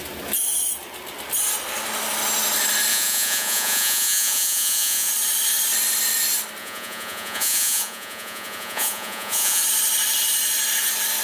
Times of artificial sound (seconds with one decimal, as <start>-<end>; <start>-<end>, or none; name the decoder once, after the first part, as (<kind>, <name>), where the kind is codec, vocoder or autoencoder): 2.9-5.1 (vocoder, Vocos); 6.6-9.6